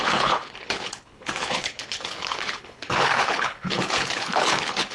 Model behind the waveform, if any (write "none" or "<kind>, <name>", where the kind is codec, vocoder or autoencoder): codec, HILCodec